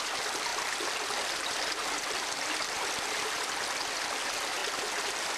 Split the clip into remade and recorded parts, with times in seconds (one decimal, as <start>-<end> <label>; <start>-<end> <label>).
0.0-0.5 recorded; 0.5-2.5 remade; 2.5-5.4 recorded